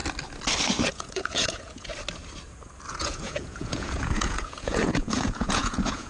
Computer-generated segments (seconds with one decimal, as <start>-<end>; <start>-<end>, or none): 0.9-1.9; 2.9-6.1